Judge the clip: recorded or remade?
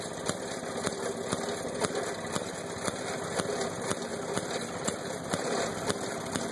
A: recorded